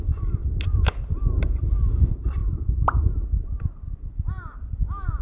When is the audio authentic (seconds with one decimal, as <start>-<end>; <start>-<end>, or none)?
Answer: 0.0-5.2

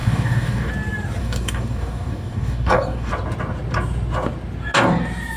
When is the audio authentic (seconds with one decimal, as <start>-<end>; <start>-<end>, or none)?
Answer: 0.7-1.2; 3.1-5.4

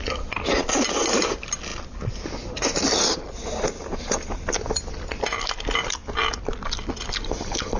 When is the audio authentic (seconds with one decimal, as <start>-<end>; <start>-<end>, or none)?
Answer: 0.0-7.8

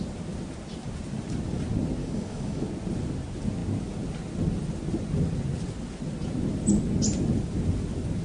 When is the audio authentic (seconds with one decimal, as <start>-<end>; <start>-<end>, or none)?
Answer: 0.0-2.0; 2.6-8.2

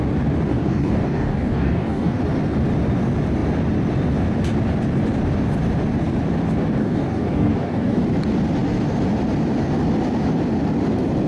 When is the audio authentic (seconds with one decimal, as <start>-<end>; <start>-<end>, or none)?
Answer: 0.0-0.5; 2.2-6.8; 8.0-11.3

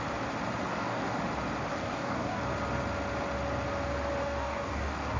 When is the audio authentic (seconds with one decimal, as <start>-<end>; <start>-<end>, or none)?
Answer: 0.0-0.7; 1.2-1.7; 2.4-4.2

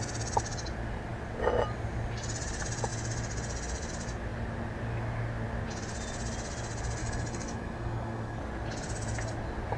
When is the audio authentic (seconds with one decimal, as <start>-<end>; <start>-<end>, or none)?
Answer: 0.0-7.0; 8.4-9.8